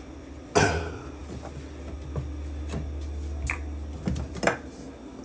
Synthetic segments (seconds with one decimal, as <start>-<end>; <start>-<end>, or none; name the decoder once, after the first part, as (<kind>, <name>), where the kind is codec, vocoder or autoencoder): none